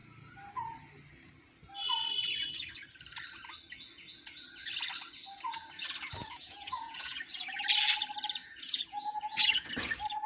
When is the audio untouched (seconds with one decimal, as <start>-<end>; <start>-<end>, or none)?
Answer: 0.0-6.2; 7.2-8.4; 9.7-10.3